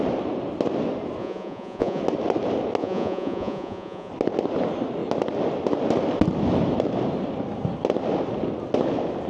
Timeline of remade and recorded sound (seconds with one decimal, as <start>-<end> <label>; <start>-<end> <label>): 0.0-1.2 recorded; 1.2-2.0 remade; 2.0-2.8 recorded; 2.8-4.1 remade; 4.1-9.3 recorded